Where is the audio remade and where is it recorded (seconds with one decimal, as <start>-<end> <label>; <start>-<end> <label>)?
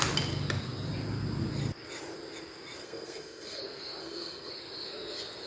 0.0-2.8 recorded; 2.8-3.6 remade; 3.6-4.0 recorded; 4.0-4.5 remade; 4.5-5.5 recorded